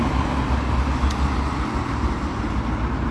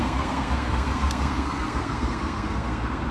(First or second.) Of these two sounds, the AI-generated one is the second